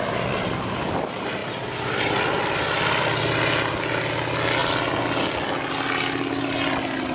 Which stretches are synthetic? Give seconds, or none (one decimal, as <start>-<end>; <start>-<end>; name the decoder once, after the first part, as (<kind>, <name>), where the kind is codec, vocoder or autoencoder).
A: none